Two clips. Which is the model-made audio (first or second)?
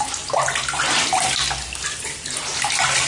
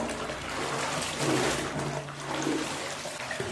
first